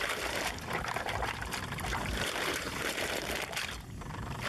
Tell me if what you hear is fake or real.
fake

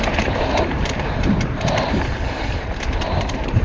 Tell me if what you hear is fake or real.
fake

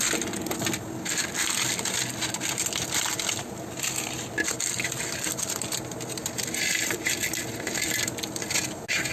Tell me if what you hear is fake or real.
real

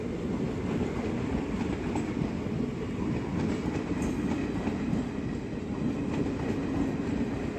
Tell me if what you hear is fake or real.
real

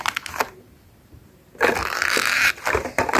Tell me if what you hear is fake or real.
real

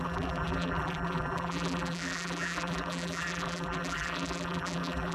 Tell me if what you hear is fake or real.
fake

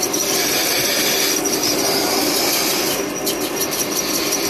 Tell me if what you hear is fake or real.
real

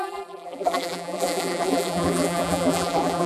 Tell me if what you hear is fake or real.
fake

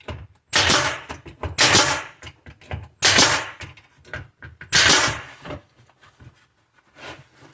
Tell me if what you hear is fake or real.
real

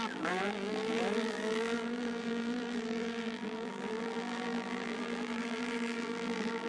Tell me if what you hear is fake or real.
fake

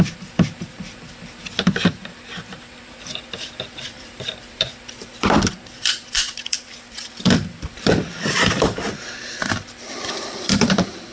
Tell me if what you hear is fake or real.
fake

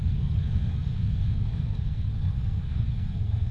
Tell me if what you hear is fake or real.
fake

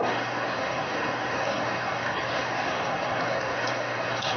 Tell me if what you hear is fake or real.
fake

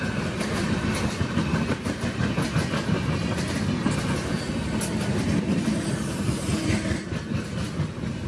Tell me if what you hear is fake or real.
real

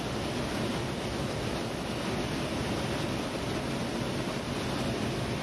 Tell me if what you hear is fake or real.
real